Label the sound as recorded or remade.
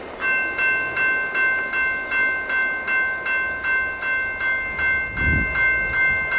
recorded